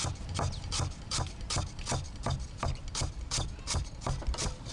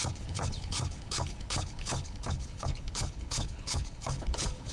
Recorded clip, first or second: first